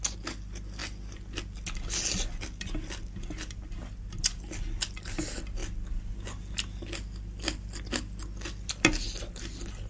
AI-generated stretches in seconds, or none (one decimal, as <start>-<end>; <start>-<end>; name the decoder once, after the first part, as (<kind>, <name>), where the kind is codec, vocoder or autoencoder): 0.8-1.4 (vocoder, BigVGAN v2)